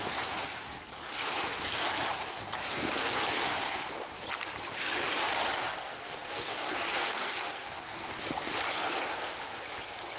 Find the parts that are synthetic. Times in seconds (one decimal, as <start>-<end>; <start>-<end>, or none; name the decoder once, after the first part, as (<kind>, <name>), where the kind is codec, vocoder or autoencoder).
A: 5.7-8.2 (codec, SNAC)